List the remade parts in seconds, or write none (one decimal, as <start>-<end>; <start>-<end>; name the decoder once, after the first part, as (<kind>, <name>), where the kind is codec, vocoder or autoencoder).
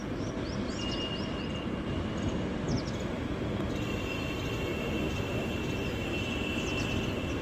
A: none